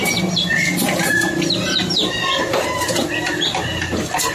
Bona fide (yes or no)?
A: yes